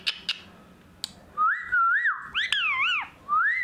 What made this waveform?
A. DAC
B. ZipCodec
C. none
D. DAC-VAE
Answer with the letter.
C